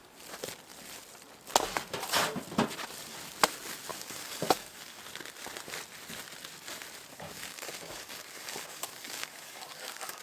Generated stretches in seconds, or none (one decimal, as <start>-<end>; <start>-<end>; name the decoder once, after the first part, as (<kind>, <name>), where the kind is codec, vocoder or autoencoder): 3.9-5.0 (codec, DAC); 7.1-10.2